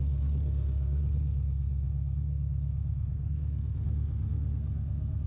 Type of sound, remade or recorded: remade